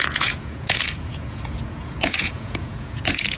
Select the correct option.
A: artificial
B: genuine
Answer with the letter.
A